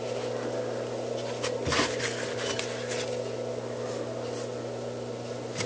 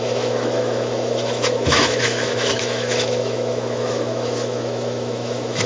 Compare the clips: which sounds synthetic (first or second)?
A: second